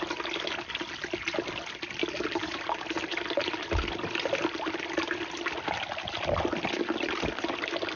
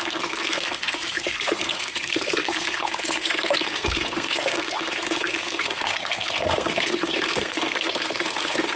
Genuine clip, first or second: first